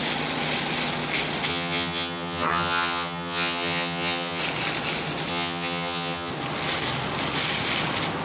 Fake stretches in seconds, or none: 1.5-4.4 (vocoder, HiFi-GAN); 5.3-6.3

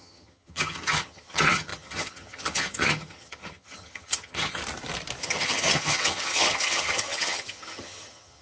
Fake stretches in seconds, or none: 0.0-4.6 (vocoder, HiFi-GAN); 5.2-8.4

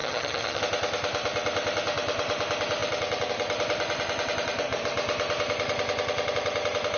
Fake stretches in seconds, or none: 0.0-0.6 (vocoder, HiFi-GAN)

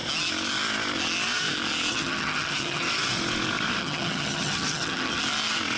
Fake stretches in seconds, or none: 1.9-2.9 (vocoder, HiFi-GAN); 3.8-5.2